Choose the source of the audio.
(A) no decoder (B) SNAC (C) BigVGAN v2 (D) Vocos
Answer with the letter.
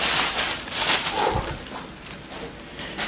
A